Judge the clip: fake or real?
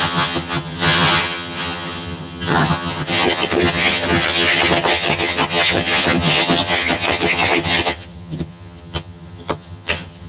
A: fake